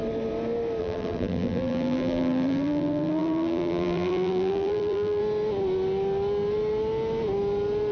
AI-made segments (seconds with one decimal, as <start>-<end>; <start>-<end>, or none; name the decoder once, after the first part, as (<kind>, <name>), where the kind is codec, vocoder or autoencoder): 0.8-5.2 (vocoder, BigVGAN v2)